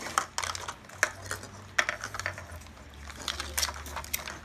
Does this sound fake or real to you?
real